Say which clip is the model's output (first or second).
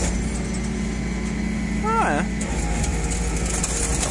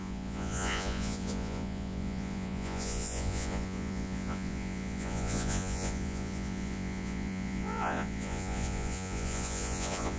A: second